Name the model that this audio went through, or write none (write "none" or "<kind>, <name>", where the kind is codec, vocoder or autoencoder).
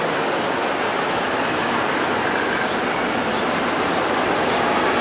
none